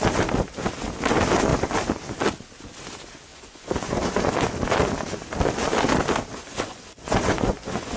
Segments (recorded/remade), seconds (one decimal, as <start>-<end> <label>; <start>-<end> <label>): 0.0-3.3 recorded; 3.3-4.5 remade; 4.5-6.3 recorded; 6.3-8.0 remade

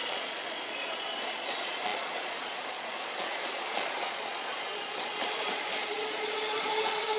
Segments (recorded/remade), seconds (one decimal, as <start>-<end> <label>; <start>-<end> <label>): 0.0-7.2 remade

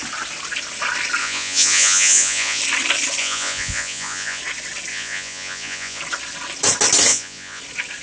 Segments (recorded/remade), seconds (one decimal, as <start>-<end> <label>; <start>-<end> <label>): 0.0-1.2 recorded; 1.2-2.6 remade; 2.6-3.2 recorded; 3.2-4.4 remade; 4.4-4.9 recorded; 4.9-6.0 remade; 6.0-7.1 recorded; 7.1-7.6 remade; 7.6-8.0 recorded

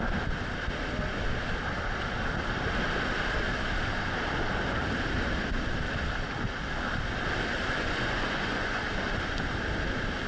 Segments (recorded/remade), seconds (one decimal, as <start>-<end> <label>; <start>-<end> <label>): 0.0-7.8 recorded; 7.8-8.8 remade; 8.8-10.3 recorded

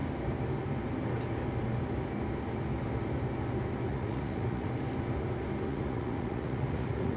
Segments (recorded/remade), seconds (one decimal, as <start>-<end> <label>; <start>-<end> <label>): 0.0-3.9 recorded; 3.9-4.7 remade; 4.7-5.7 recorded; 5.7-7.2 remade

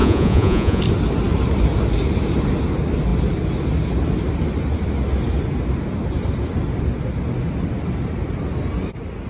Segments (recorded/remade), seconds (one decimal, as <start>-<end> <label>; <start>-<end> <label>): 0.0-0.8 remade; 0.8-9.3 recorded

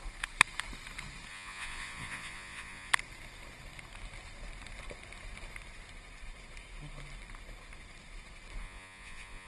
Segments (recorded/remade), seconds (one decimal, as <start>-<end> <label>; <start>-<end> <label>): 0.0-1.3 recorded; 1.3-2.9 remade; 2.9-8.6 recorded; 8.6-9.5 remade

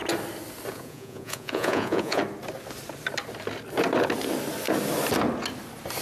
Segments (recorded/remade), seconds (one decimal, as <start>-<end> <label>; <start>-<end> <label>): 0.0-0.7 recorded; 0.7-2.2 remade; 2.2-6.0 recorded